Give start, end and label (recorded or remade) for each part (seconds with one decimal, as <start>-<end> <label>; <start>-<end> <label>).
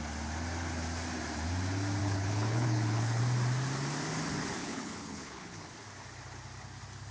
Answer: 0.0-2.0 recorded; 2.0-3.2 remade; 3.2-4.6 recorded; 4.6-5.7 remade; 5.7-7.1 recorded